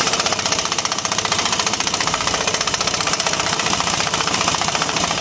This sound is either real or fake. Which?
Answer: fake